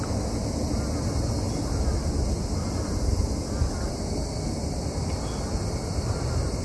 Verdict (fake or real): real